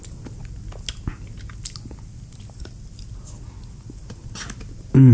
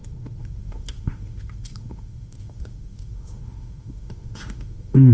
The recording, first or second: first